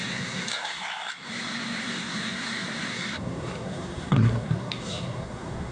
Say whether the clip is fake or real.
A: fake